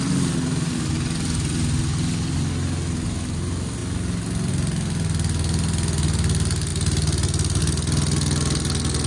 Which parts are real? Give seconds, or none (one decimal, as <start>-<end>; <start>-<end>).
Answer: 0.0-9.1